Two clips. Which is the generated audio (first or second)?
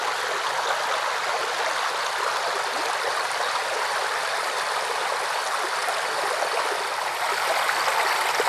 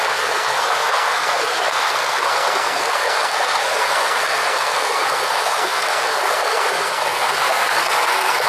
second